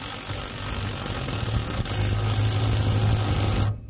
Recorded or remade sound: recorded